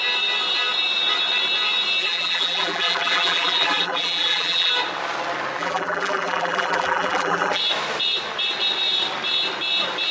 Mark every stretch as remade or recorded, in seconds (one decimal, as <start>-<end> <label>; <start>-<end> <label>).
0.0-2.0 recorded; 2.0-4.7 remade; 4.7-5.6 recorded; 5.6-7.6 remade; 7.6-10.1 recorded